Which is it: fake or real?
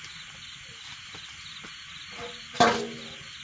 real